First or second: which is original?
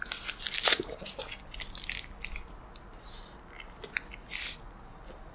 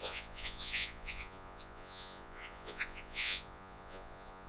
first